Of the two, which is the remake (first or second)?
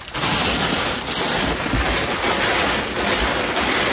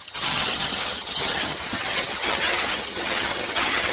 second